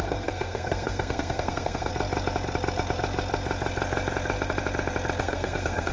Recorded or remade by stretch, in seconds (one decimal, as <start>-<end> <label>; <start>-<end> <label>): 0.0-1.9 remade; 1.9-5.2 recorded; 5.2-5.9 remade